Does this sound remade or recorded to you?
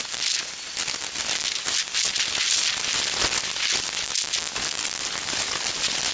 recorded